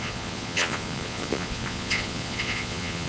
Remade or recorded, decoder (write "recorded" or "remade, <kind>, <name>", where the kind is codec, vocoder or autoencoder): remade, vocoder, Vocos